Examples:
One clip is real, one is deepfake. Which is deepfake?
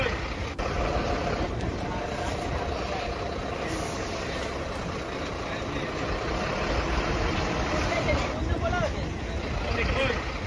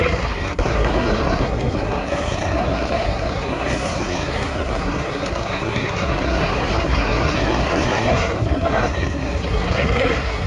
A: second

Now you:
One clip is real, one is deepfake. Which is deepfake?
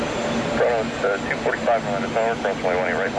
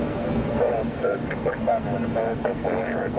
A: second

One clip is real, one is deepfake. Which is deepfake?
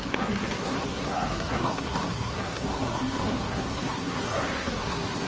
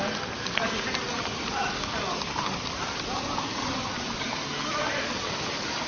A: first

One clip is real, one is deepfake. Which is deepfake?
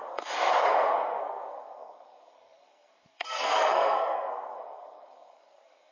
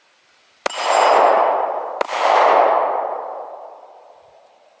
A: first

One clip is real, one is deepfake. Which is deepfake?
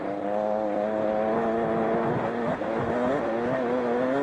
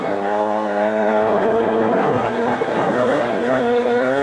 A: second